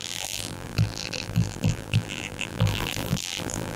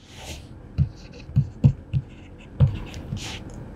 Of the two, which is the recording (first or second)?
second